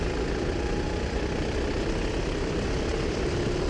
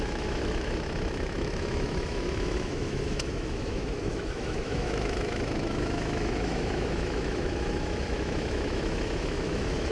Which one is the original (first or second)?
first